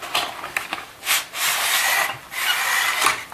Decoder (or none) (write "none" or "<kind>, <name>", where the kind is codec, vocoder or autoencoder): none